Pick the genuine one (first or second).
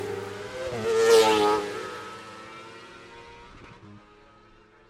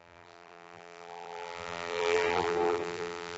first